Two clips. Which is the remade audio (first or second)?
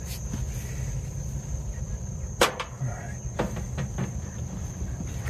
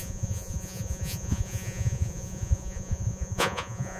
second